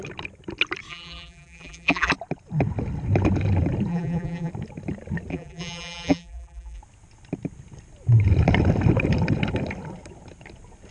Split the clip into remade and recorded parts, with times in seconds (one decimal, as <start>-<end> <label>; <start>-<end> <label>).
0.0-0.9 recorded; 0.9-2.1 remade; 2.1-3.9 recorded; 3.9-4.5 remade; 4.5-5.3 recorded; 5.3-6.8 remade; 6.8-10.9 recorded